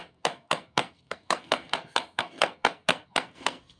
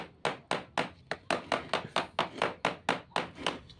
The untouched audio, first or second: second